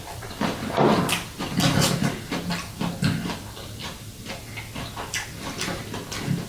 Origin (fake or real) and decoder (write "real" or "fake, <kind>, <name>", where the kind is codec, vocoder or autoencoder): real